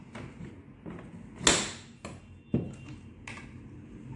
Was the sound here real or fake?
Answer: real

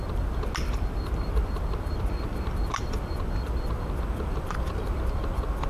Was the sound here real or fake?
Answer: real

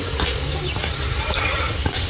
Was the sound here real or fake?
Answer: real